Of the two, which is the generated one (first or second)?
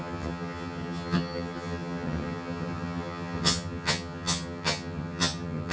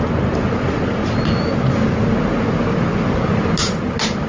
first